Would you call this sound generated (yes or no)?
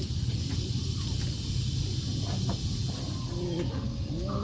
no